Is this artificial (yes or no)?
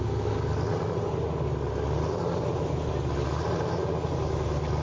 no